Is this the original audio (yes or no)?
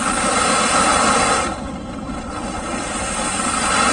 yes